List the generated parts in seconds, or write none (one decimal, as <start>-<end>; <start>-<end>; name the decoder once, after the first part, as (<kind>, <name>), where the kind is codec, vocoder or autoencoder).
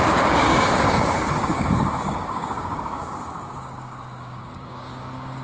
0.0-5.4 (codec, DAC)